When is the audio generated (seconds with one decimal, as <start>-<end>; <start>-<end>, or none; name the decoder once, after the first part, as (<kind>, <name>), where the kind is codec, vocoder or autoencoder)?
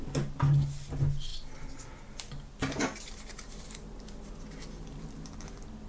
none